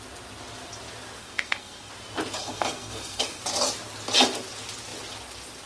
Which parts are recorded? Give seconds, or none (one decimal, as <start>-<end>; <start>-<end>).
0.0-1.2; 1.9-2.4; 3.4-5.7